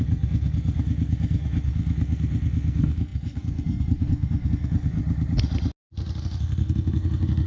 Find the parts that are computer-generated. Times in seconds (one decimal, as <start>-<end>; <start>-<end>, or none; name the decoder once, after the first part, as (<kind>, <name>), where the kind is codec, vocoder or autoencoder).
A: 0.0-5.0 (codec, SNAC); 6.2-7.5